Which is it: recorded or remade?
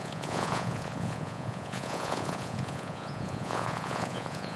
remade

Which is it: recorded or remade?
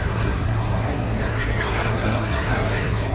remade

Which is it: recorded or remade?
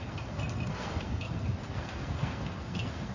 remade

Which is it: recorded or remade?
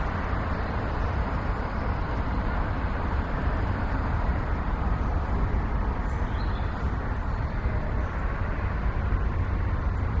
remade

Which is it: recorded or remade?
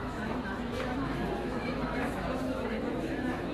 remade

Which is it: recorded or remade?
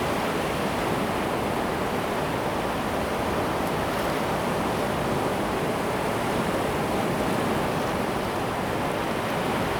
recorded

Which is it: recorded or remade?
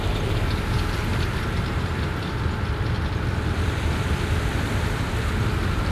remade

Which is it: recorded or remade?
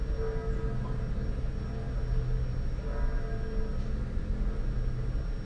recorded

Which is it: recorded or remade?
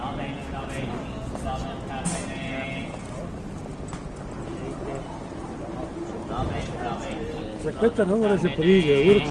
recorded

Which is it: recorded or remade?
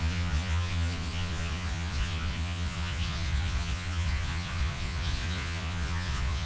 remade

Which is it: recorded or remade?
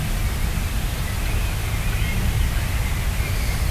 recorded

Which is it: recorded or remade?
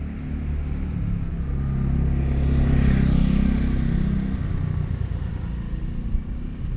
recorded